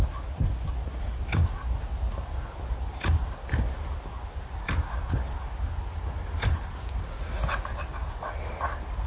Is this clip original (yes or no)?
yes